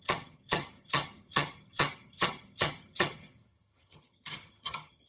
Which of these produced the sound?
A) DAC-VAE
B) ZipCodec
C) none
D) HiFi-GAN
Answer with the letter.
D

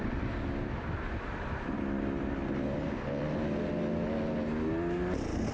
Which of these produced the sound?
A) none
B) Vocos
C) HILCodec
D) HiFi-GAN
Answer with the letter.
A